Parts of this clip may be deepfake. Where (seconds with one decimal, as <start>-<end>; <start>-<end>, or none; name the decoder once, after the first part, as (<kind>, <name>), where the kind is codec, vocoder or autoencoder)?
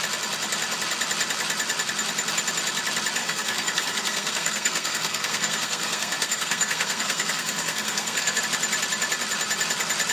3.2-8.4 (codec, SNAC)